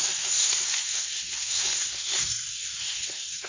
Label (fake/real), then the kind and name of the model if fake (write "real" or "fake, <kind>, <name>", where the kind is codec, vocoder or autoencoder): fake, codec, SNAC